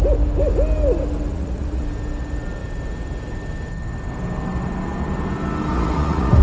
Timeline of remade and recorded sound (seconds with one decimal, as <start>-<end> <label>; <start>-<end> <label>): 0.0-1.3 recorded; 1.3-1.8 remade; 1.8-5.7 recorded; 5.7-6.4 remade